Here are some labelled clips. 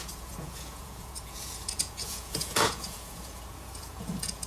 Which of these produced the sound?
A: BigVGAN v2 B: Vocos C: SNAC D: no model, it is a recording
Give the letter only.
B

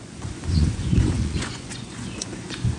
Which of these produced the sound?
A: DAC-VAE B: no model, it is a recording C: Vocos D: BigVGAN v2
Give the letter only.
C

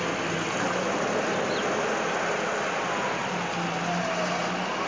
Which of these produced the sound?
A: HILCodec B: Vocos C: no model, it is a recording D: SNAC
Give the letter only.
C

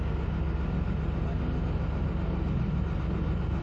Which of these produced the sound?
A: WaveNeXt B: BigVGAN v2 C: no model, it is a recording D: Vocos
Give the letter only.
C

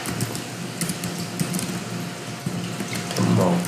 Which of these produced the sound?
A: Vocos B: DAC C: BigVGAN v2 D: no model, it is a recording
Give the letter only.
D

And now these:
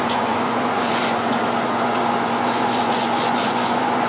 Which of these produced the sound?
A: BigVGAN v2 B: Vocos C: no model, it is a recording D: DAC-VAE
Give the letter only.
B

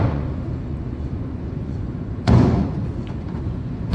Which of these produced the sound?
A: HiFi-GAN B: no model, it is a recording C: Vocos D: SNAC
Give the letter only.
C